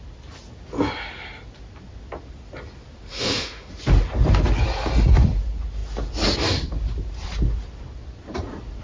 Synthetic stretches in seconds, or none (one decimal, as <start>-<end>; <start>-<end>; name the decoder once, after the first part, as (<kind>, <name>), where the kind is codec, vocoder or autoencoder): 3.1-3.7 (autoencoder, DAC-VAE)